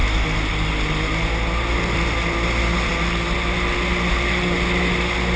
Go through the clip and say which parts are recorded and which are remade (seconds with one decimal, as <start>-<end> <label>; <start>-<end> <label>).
0.0-5.4 recorded